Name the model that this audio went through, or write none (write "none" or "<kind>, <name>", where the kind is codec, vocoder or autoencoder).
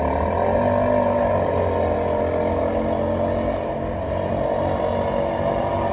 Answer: none